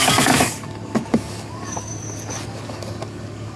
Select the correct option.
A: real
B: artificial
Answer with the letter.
B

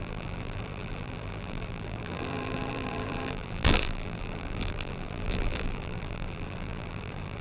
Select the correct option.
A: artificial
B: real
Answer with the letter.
A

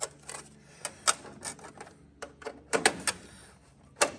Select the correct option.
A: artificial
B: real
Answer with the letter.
B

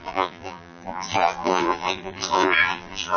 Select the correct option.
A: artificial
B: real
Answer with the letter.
A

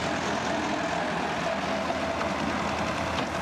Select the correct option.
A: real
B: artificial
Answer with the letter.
A